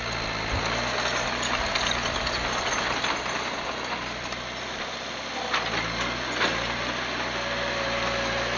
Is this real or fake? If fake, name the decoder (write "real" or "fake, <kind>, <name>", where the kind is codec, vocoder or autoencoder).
real